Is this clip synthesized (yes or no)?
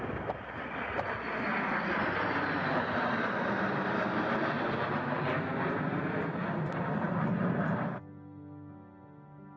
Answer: no